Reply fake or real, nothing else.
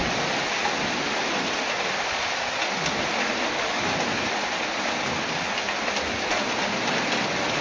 real